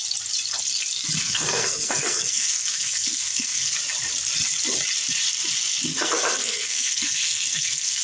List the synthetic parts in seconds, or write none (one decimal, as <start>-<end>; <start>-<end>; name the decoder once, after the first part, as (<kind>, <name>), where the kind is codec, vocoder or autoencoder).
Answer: 1.2-3.7 (codec, SNAC); 5.9-8.0